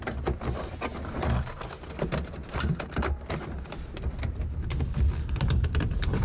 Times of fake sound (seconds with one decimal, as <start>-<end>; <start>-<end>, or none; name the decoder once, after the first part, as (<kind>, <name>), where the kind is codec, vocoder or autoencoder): none